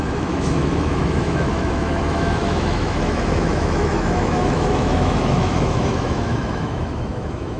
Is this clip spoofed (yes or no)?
yes